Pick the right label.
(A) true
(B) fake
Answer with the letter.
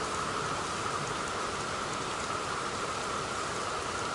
A